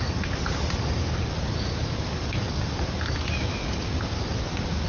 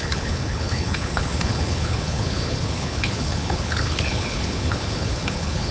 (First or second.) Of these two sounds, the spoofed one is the second